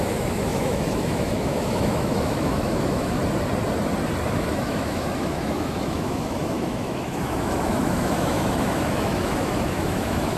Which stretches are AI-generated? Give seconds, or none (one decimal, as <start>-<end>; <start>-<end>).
0.0-3.2; 4.3-10.4

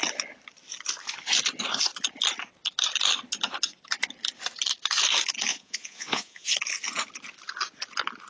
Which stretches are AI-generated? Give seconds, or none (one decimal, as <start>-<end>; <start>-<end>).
5.5-6.5